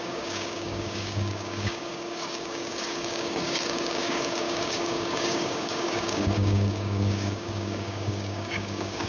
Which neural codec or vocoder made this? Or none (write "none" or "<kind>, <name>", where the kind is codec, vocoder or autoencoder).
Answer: codec, DAC